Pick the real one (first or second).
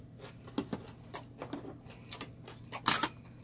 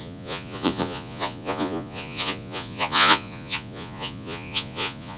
first